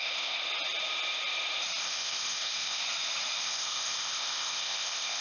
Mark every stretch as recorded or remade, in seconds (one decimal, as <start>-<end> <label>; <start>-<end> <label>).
0.0-0.4 remade; 0.4-1.8 recorded; 1.8-2.8 remade; 2.8-3.4 recorded; 3.4-5.2 remade